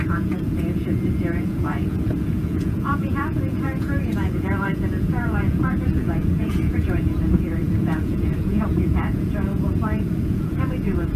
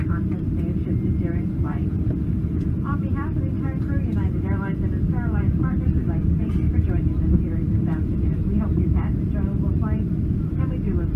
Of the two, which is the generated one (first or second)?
first